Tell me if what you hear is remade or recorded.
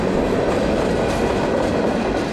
recorded